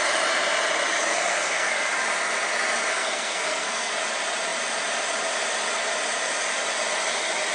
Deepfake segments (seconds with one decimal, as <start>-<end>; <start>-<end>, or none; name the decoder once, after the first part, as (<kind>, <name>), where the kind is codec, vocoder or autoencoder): 1.1-1.9 (codec, SNAC); 2.9-3.9